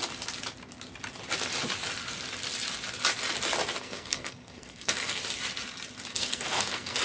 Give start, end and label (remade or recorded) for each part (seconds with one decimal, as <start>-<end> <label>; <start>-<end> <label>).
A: 0.0-3.8 recorded; 3.8-5.2 remade; 5.2-6.1 recorded; 6.1-7.0 remade